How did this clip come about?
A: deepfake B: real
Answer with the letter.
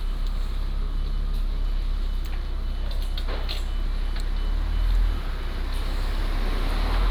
B